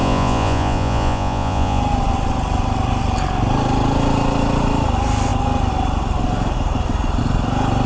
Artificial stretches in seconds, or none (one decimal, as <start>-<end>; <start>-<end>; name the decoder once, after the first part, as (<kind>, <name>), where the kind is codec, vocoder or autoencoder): 0.0-1.8 (vocoder, Vocos)